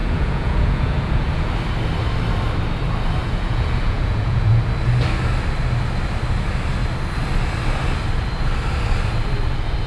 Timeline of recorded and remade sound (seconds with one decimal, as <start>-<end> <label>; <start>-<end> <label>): 0.0-1.5 remade; 1.5-3.2 recorded; 3.2-4.6 remade; 4.6-9.9 recorded